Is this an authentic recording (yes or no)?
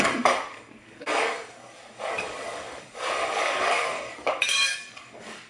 no